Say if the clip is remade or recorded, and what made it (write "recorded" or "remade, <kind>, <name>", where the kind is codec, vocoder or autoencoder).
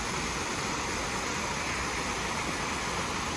recorded